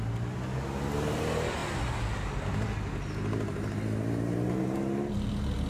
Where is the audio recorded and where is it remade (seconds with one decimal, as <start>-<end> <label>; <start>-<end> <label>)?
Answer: 0.0-5.7 recorded